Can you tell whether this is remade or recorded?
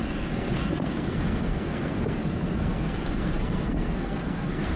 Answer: remade